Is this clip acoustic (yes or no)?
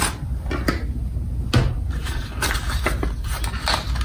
yes